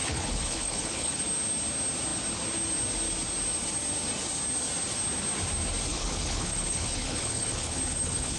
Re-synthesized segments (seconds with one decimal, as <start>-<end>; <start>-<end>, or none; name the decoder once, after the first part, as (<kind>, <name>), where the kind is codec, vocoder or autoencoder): 0.0-1.2 (codec, HILCodec); 5.9-8.4